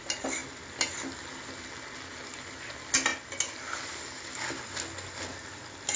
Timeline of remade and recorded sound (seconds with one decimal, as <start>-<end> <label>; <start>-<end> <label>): 0.0-6.0 recorded